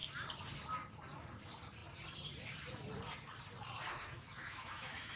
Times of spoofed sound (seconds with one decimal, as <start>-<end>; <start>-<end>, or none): 3.9-5.2